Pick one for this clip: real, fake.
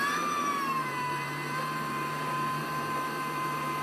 fake